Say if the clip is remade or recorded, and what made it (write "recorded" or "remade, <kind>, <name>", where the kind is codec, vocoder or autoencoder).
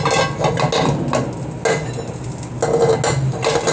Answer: recorded